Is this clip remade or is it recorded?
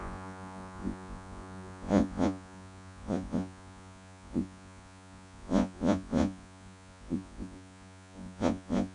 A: remade